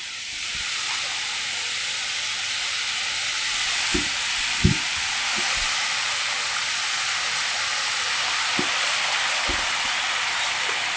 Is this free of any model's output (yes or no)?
no